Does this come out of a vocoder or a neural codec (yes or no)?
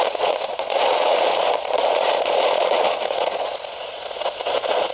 yes